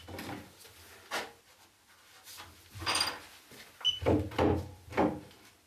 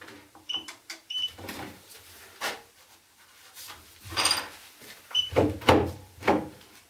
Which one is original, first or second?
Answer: first